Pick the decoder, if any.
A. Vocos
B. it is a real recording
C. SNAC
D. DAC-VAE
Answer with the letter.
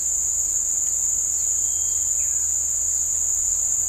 B